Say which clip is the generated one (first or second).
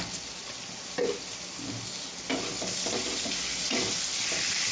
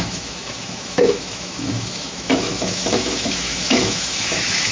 second